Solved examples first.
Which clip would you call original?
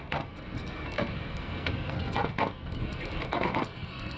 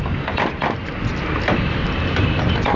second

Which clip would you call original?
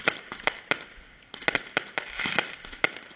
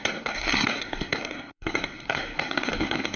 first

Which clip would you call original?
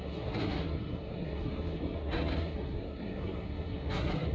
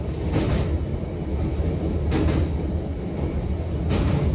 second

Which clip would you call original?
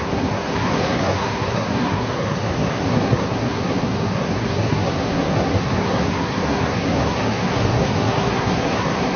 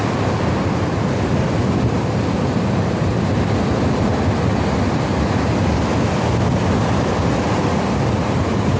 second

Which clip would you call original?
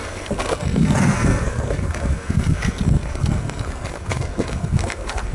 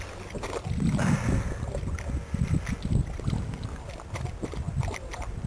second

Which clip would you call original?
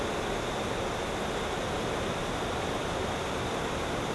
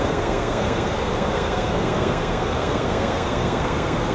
first